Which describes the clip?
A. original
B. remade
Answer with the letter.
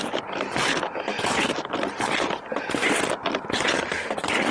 A